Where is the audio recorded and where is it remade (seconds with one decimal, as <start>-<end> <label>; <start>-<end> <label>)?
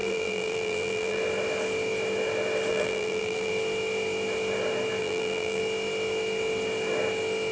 0.0-1.2 remade; 1.2-2.7 recorded; 2.7-3.5 remade; 3.5-5.0 recorded; 5.0-5.6 remade; 5.6-7.5 recorded